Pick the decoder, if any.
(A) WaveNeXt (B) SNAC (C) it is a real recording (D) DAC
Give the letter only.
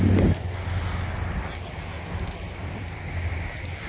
C